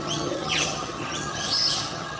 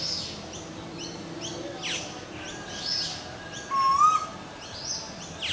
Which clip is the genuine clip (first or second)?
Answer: second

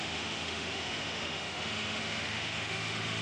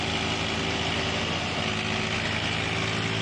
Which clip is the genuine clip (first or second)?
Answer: second